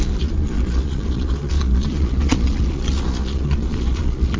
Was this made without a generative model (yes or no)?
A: no